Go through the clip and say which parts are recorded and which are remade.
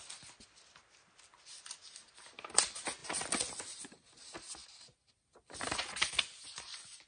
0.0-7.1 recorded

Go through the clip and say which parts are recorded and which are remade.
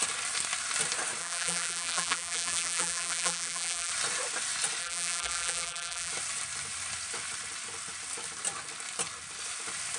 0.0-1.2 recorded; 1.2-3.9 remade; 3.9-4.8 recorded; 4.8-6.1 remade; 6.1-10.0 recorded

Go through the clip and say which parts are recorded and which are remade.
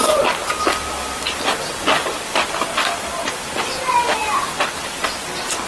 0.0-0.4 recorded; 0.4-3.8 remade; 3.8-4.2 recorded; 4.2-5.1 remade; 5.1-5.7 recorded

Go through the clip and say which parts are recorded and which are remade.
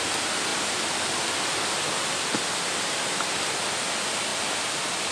0.0-4.3 recorded; 4.3-5.1 remade